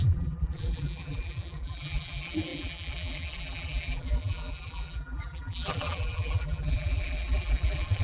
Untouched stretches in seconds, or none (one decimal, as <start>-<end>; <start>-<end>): none